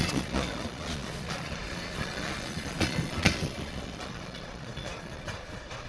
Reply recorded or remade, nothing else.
remade